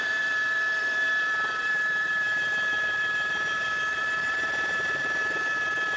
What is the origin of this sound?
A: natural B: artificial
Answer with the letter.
B